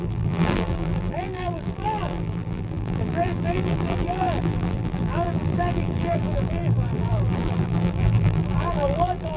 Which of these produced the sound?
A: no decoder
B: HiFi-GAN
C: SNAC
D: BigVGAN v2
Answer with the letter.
D